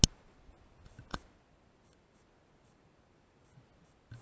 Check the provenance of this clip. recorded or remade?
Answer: recorded